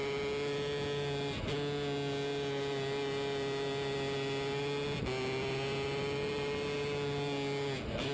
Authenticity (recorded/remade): recorded